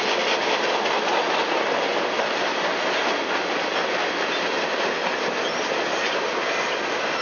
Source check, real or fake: real